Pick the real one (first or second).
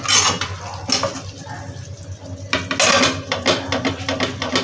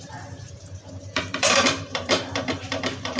first